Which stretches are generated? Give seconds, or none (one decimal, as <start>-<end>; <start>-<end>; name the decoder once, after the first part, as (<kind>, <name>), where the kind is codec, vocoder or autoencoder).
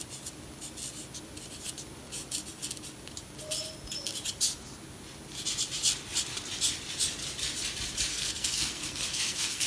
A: 8.1-9.7 (codec, SNAC)